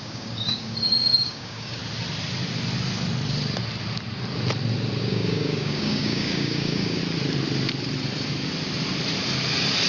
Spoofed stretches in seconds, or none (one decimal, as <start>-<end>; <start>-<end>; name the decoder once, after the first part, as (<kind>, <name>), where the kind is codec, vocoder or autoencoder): 0.0-1.8 (codec, DAC); 5.0-7.0